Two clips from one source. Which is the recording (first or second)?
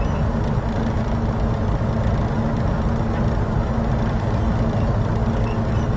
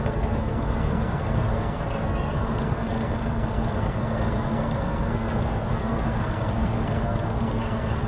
first